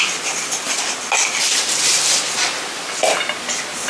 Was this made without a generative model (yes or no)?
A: yes